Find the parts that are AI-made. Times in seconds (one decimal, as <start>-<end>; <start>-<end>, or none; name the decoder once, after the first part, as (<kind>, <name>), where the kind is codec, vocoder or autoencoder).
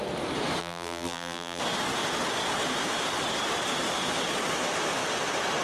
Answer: 0.6-1.6 (vocoder, BigVGAN v2)